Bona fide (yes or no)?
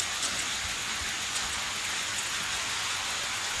no